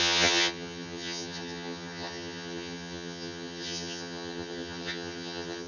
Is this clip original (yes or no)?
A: no